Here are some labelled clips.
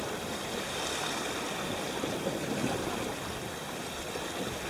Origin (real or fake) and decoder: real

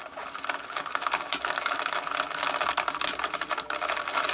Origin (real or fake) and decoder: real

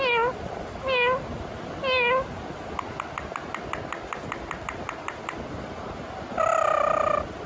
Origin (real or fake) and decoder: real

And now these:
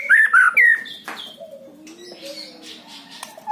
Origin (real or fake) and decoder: real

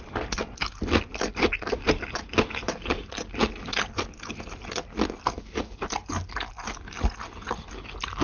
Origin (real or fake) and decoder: real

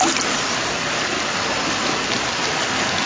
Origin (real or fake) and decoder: real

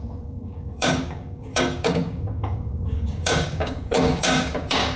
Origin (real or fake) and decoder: fake, codec, DAC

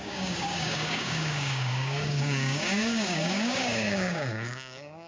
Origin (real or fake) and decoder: fake, codec, DAC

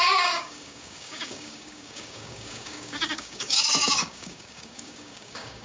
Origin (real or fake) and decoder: fake, codec, DAC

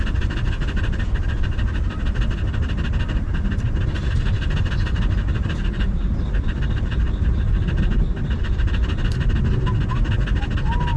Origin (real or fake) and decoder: real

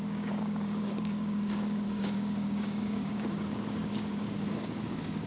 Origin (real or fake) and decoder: fake, codec, DAC